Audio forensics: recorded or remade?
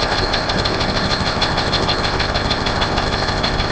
remade